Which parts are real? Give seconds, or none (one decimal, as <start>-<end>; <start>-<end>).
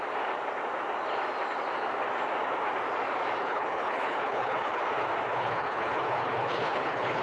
0.0-3.4; 4.8-5.3